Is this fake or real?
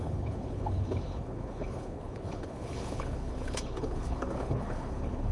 fake